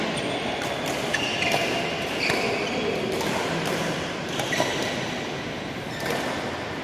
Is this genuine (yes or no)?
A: yes